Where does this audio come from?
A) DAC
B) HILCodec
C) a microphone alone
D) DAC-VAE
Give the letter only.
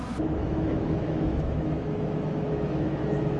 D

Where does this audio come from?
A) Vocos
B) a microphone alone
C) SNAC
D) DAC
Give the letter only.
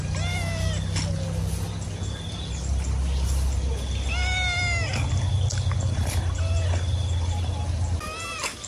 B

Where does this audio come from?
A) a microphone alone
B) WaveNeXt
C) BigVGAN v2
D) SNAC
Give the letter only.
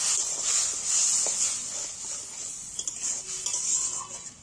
A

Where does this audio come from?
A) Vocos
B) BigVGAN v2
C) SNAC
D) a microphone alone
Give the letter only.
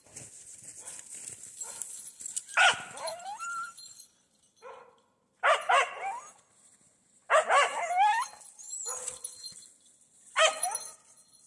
D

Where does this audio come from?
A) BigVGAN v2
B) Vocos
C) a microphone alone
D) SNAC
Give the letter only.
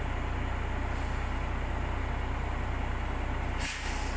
C